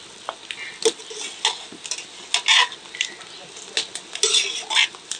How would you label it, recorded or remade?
recorded